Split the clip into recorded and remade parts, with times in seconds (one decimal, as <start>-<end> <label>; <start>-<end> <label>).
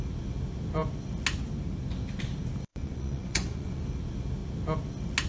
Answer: 0.0-2.7 recorded; 2.7-3.8 remade; 3.8-5.3 recorded